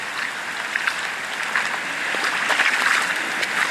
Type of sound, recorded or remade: recorded